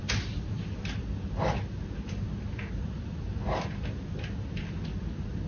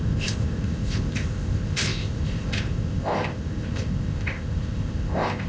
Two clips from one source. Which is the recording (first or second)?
first